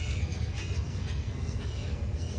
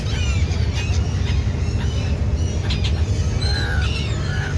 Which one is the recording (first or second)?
second